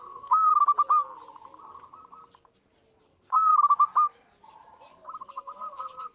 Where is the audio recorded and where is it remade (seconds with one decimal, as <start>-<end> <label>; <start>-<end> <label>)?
0.0-0.5 remade; 0.5-3.0 recorded; 3.0-3.5 remade; 3.5-5.3 recorded; 5.3-6.1 remade